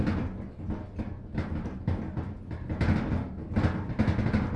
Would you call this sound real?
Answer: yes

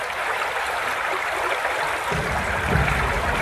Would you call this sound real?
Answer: yes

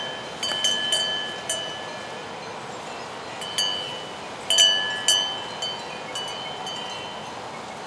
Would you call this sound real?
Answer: yes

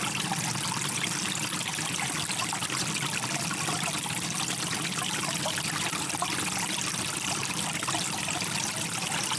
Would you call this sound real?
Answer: yes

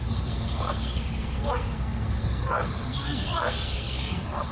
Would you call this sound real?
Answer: no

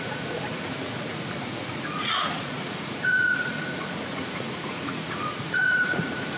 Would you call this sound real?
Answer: no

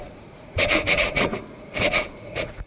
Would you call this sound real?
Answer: no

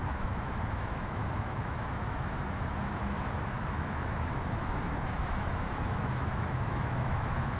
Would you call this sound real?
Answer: no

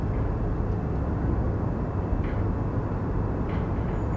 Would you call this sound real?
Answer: yes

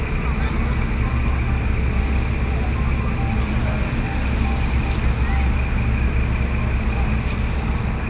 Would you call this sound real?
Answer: yes